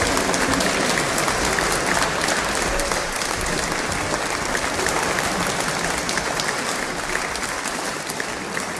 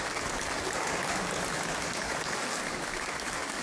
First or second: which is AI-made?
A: second